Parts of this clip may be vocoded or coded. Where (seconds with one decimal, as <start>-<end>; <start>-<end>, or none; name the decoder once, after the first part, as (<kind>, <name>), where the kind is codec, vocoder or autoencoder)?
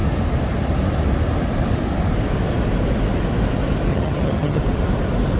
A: 3.9-4.6 (vocoder, HiFi-GAN)